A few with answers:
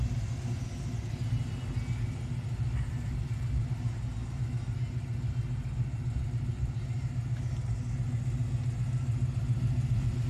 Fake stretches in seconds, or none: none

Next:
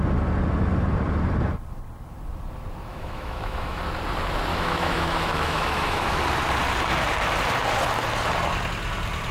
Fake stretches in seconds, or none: 2.9-3.8 (autoencoder, DAC-VAE); 4.5-6.1

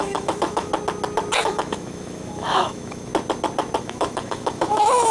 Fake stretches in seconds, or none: 0.0-0.7 (autoencoder, DAC-VAE); 1.4-3.1; 3.8-5.1

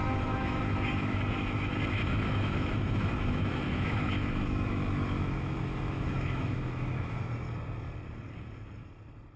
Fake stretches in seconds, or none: 0.0-1.2 (autoencoder, DAC-VAE); 2.0-7.2

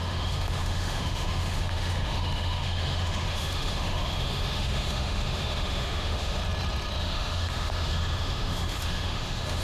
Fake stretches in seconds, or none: 0.0-6.4 (autoencoder, DAC-VAE); 7.0-9.6

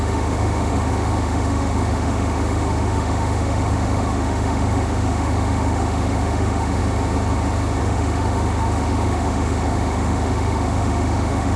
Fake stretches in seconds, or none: 0.0-6.8 (autoencoder, DAC-VAE); 7.8-11.6

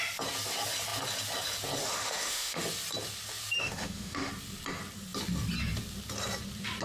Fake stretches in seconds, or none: 1.8-2.6 (autoencoder, DAC-VAE); 3.6-4.3

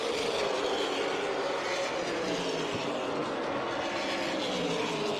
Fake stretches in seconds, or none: none